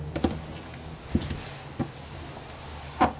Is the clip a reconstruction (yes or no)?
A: no